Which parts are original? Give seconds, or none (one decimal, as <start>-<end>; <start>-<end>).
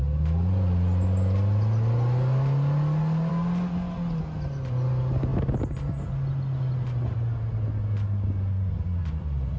0.0-9.6